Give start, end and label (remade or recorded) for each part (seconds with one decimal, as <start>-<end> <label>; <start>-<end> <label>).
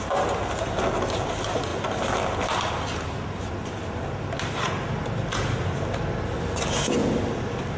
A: 0.0-7.8 recorded